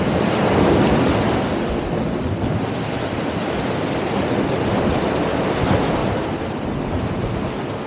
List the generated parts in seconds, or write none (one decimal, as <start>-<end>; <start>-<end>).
6.0-7.3